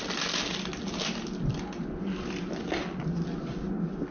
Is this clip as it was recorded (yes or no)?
yes